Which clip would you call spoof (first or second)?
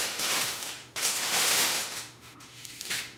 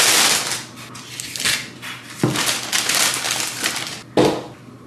first